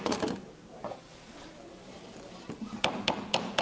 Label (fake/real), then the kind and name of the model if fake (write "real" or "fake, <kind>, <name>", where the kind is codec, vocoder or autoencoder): fake, vocoder, BigVGAN v2